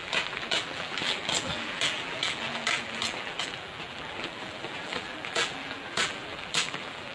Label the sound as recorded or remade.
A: remade